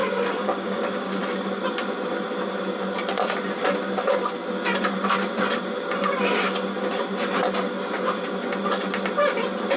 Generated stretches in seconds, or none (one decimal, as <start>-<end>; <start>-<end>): 0.0-1.2